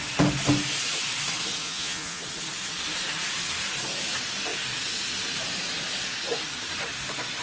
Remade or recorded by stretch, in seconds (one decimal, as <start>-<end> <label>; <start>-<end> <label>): 0.0-1.6 recorded; 1.6-2.2 remade; 2.2-7.4 recorded